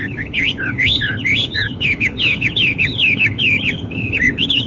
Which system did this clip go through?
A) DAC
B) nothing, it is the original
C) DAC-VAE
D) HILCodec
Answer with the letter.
D